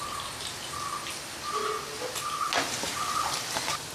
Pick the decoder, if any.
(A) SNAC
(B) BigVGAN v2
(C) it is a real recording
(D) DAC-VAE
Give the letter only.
C